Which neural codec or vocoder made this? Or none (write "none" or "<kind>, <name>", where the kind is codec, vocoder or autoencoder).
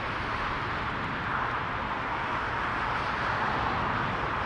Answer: none